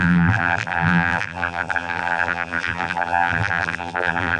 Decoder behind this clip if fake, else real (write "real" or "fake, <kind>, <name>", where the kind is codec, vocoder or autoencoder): fake, vocoder, BigVGAN v2